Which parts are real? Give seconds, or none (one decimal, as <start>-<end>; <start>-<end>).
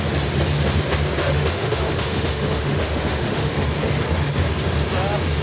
0.0-1.2; 3.6-5.4